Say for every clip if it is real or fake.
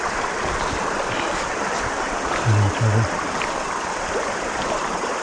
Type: real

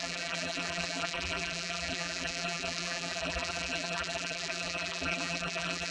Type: fake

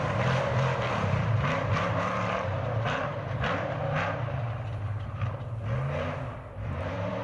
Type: fake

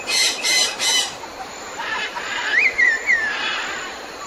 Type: fake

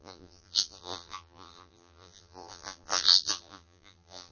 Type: fake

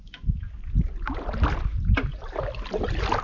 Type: real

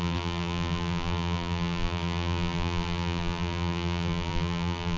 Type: fake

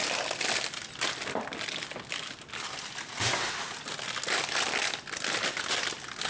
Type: real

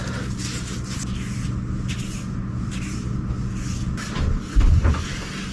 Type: real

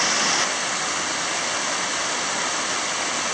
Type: real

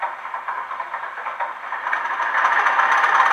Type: real